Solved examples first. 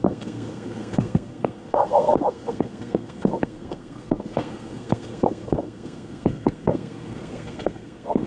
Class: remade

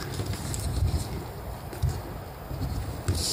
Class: recorded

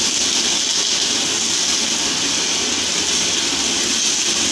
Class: recorded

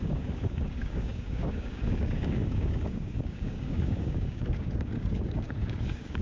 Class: remade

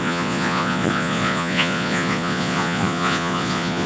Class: remade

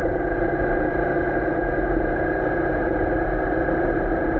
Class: remade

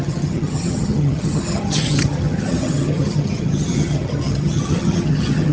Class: remade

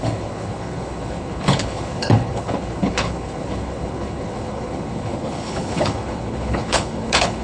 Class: remade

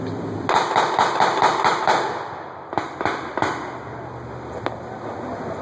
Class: recorded